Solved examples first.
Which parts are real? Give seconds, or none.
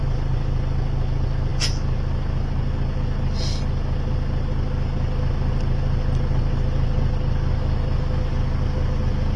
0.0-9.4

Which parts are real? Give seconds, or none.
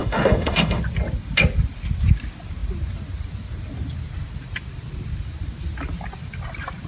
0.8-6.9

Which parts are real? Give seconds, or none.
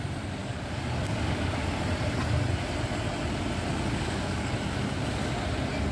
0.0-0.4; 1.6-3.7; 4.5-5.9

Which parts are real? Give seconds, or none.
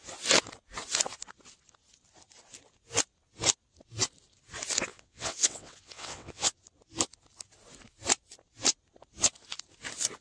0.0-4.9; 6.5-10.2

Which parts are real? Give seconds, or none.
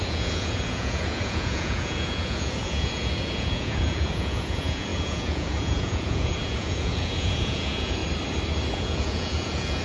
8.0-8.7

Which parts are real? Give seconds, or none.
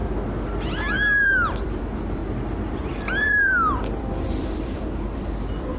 0.0-1.2; 2.2-2.7